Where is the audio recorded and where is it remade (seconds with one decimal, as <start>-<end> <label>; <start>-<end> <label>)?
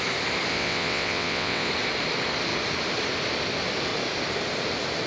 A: 0.0-0.5 recorded; 0.5-1.7 remade; 1.7-5.1 recorded